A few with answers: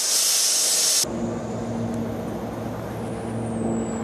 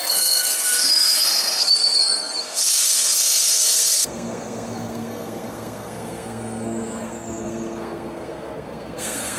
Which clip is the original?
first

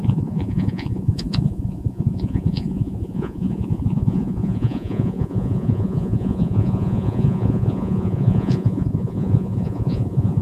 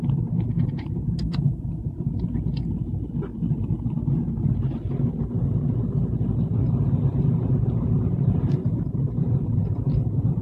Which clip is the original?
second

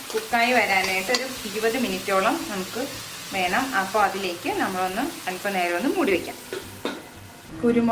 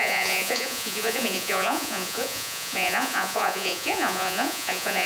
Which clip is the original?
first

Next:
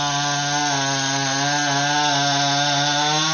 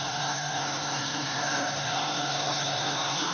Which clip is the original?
first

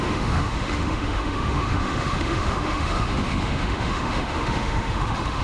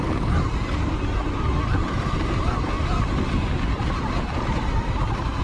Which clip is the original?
second